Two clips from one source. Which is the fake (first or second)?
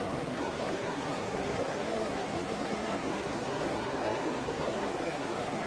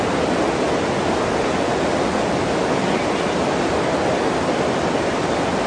first